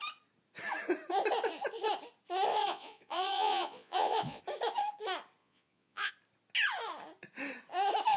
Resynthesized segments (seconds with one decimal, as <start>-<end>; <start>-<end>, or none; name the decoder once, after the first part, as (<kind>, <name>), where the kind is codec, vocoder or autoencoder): 2.6-4.4 (vocoder, Vocos); 5.4-6.1

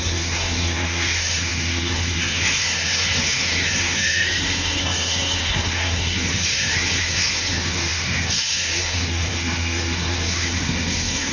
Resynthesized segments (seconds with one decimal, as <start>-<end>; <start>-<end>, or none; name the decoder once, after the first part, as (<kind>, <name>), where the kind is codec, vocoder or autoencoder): 0.0-11.3 (codec, SNAC)

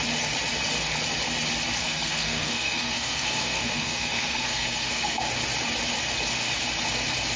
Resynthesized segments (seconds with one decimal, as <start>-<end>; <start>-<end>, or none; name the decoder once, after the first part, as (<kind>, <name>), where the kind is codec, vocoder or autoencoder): 1.8-5.2 (codec, SNAC)

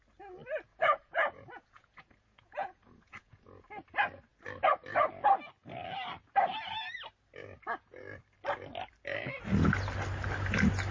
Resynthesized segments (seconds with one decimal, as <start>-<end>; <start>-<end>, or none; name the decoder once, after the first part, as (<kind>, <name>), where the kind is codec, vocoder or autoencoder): 0.7-3.7 (vocoder, Vocos)

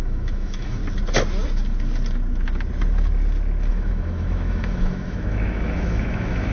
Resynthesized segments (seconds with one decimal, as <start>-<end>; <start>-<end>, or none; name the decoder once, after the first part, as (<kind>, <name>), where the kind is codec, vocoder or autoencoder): 0.0-0.8 (autoencoder, DAC-VAE); 3.7-6.5

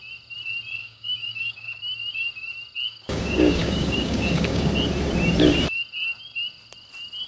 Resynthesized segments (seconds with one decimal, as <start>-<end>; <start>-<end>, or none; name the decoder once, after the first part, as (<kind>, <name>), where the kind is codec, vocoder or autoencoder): 0.8-1.8 (codec, DAC); 2.9-4.7

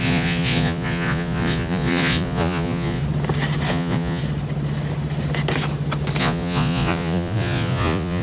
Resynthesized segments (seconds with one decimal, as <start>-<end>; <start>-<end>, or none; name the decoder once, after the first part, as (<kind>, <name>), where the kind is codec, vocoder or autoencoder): 0.0-3.0 (vocoder, Vocos); 3.7-4.2; 6.2-8.2

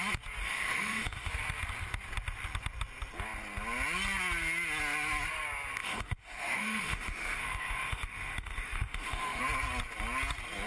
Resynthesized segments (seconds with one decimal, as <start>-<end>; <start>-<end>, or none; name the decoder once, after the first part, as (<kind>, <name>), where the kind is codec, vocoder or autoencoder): 0.4-1.3 (autoencoder, DAC-VAE); 5.8-9.4